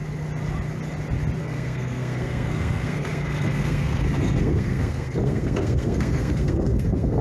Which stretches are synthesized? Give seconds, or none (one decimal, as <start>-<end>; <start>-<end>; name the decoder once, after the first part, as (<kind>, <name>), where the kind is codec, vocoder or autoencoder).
1.4-7.2 (codec, SNAC)